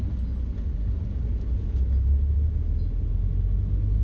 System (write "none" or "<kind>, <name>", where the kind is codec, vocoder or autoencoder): none